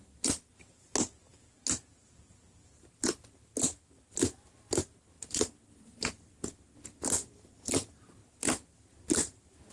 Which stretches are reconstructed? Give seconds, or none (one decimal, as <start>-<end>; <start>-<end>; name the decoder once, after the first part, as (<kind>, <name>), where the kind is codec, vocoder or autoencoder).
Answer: none

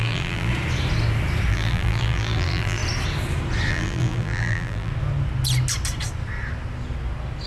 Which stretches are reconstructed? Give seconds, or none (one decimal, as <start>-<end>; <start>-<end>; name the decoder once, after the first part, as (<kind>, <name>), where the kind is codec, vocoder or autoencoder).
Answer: 0.0-0.5 (vocoder, BigVGAN v2); 1.5-2.8; 3.7-4.9

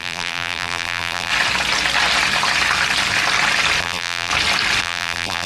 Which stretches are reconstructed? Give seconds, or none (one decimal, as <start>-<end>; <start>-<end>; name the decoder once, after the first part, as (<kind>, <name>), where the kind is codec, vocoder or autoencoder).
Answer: 0.0-1.3 (vocoder, BigVGAN v2); 3.8-4.3; 4.8-5.5

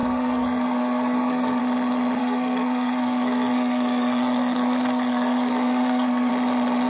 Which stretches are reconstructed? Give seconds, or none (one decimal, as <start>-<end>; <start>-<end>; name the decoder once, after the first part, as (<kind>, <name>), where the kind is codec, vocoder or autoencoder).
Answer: 0.0-1.6 (codec, SNAC); 2.2-6.3

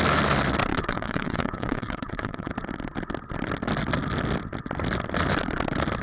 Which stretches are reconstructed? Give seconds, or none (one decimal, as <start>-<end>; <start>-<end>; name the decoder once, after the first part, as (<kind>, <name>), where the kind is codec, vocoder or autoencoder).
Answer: 0.7-2.5 (vocoder, WaveNeXt)

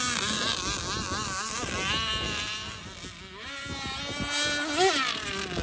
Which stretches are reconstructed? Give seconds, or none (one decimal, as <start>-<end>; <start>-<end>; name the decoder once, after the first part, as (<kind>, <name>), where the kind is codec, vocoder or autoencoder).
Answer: none

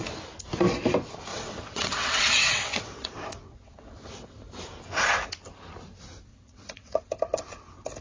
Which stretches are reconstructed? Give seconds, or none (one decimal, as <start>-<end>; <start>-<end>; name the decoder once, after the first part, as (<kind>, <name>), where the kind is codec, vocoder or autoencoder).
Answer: 1.3-4.4 (vocoder, WaveNeXt); 6.3-7.0